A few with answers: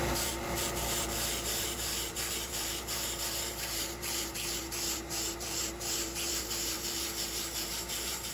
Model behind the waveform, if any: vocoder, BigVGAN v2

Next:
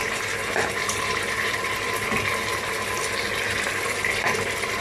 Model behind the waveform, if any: none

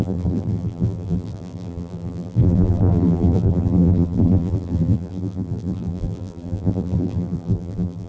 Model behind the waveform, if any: vocoder, BigVGAN v2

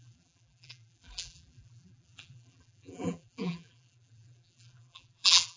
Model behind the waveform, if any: vocoder, BigVGAN v2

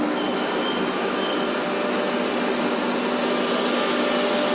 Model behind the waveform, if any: none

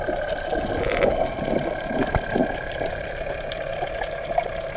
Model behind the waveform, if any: none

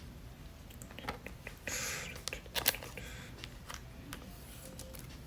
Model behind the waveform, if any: none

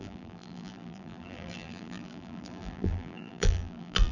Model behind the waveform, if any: vocoder, BigVGAN v2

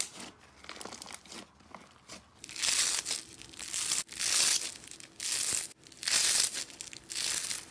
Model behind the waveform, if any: none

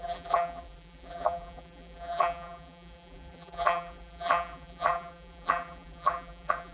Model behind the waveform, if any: vocoder, BigVGAN v2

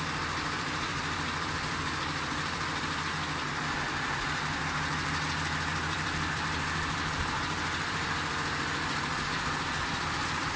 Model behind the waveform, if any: vocoder, BigVGAN v2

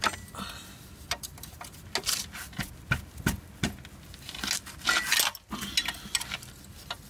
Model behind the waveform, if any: none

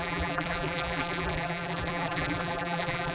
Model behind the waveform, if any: vocoder, BigVGAN v2